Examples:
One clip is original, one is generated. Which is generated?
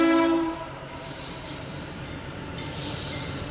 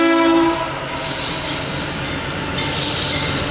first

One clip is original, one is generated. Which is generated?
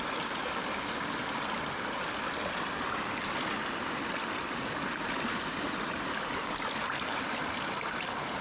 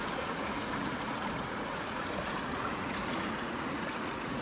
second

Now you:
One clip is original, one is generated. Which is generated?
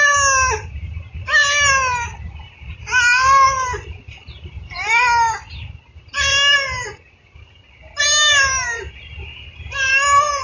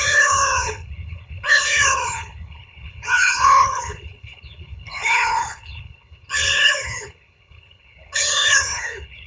second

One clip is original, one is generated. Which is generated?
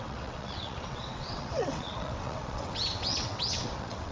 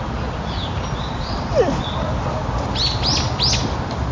first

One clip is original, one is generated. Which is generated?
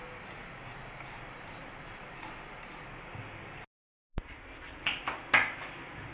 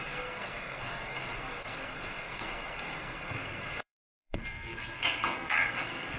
second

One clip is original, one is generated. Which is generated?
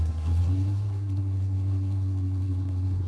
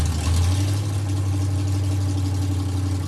first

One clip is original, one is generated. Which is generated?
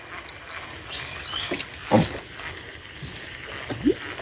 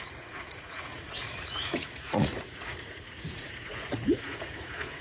second